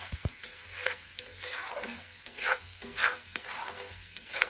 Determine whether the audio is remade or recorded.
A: remade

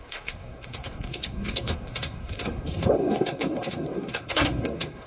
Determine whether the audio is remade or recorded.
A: remade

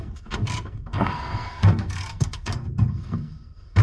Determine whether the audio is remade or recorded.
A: remade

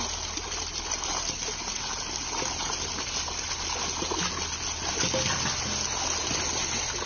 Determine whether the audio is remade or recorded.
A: recorded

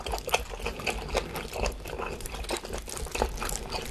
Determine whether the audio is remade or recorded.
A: recorded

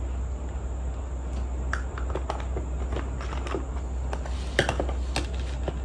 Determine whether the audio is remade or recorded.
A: recorded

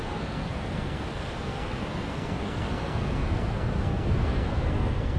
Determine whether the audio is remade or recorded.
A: remade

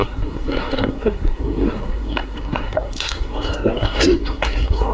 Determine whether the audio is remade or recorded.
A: remade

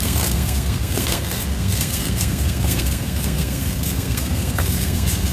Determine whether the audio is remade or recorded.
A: remade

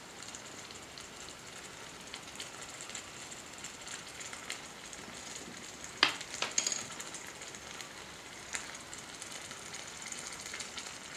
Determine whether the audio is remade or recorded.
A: recorded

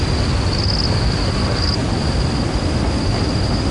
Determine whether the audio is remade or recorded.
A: recorded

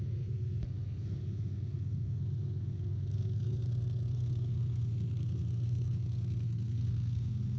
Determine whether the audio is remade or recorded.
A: remade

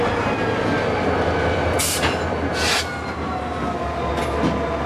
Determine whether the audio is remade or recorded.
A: recorded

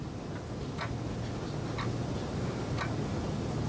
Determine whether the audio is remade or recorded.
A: recorded